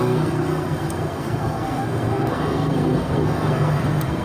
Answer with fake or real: fake